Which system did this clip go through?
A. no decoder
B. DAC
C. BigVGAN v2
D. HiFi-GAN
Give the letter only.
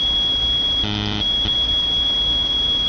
C